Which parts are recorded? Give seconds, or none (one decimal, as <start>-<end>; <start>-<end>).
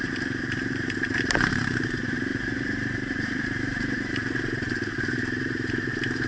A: none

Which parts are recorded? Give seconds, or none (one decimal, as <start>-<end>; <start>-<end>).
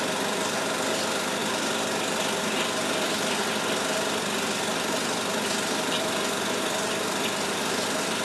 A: 0.0-8.2